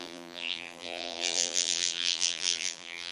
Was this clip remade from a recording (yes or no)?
yes